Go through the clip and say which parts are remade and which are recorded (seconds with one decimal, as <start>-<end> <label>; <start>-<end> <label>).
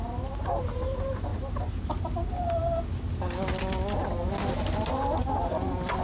0.0-1.3 remade; 1.3-4.9 recorded; 4.9-6.0 remade